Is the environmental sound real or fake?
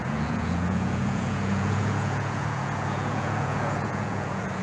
fake